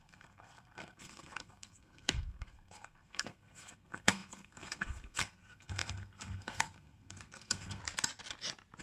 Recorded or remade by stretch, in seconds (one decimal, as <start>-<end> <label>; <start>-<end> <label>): 0.0-7.8 remade; 7.8-8.8 recorded